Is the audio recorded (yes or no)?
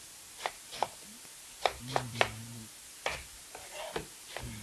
no